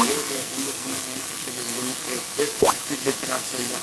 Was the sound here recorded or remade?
remade